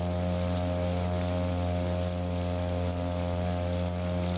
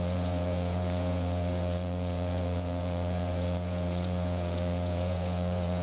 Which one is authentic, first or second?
first